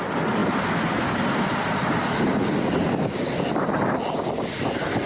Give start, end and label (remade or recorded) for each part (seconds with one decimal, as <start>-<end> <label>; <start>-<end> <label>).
0.0-5.1 recorded

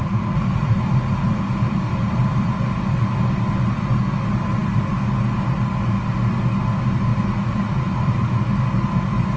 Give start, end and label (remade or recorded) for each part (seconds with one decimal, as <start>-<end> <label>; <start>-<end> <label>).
0.0-1.4 remade; 1.4-7.1 recorded; 7.1-8.5 remade; 8.5-9.4 recorded

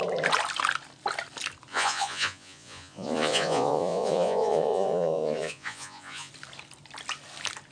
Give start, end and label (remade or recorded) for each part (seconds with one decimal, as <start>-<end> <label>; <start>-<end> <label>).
0.0-1.7 recorded; 1.7-6.3 remade; 6.3-7.7 recorded

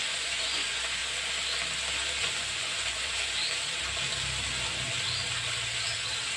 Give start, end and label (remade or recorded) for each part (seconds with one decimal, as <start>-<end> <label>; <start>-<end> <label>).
0.0-1.0 remade; 1.0-2.2 recorded; 2.2-3.4 remade; 3.4-6.4 recorded

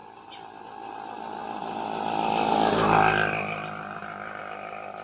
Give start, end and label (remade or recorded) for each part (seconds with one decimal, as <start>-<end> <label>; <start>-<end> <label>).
0.0-5.0 recorded

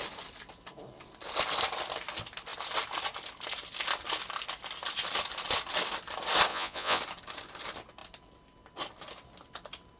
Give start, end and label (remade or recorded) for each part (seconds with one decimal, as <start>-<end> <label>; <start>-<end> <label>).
0.0-6.5 recorded; 6.5-7.0 remade; 7.0-10.0 recorded

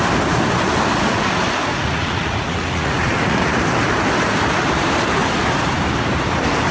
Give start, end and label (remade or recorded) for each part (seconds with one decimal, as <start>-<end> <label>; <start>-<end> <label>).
0.0-1.7 recorded; 1.7-3.5 remade; 3.5-6.7 recorded